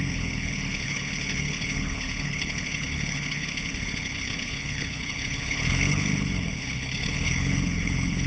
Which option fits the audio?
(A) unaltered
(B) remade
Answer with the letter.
B